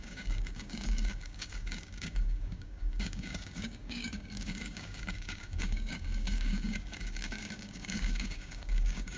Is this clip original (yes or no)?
no